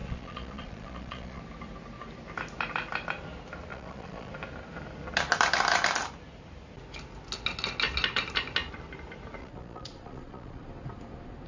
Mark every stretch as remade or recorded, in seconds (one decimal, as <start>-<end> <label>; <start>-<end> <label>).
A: 0.0-1.4 remade; 1.4-3.7 recorded; 3.7-4.3 remade; 4.3-9.4 recorded; 9.4-10.6 remade; 10.6-11.5 recorded